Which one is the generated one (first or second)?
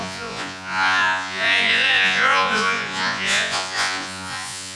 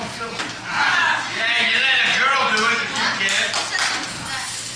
first